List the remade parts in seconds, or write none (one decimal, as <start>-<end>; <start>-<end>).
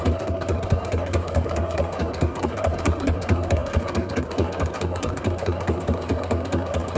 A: 0.0-7.0